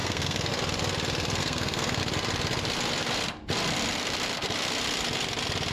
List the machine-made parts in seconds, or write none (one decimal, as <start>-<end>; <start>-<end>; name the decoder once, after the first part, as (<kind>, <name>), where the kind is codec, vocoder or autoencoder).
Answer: 0.0-0.5 (codec, SNAC); 1.4-2.0